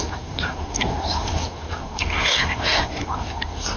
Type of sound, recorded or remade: remade